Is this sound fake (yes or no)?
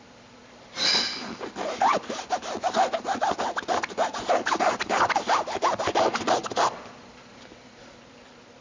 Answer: yes